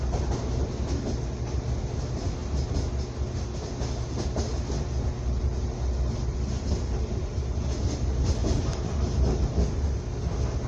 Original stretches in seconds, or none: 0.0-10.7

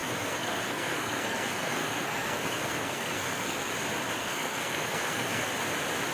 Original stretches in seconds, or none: 3.7-4.2; 5.5-6.1

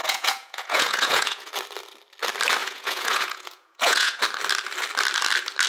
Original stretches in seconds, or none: 1.5-2.6; 4.2-5.7

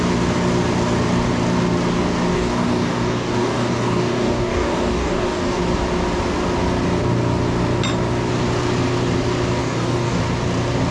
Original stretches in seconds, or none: 0.0-2.3; 5.6-9.6; 10.2-10.9

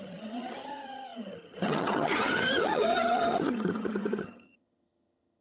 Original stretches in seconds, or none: none